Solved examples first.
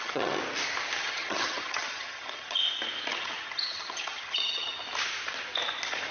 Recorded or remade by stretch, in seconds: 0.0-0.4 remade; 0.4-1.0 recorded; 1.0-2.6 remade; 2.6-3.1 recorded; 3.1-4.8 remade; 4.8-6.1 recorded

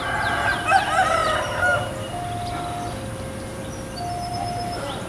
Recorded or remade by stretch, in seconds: 0.0-5.1 recorded